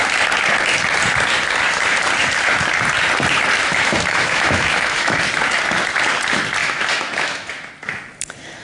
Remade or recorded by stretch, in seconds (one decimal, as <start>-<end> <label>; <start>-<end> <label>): 0.0-3.6 recorded; 3.6-5.2 remade; 5.2-6.6 recorded; 6.6-7.5 remade; 7.5-8.6 recorded